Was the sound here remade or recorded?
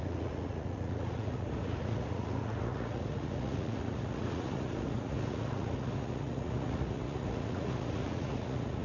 remade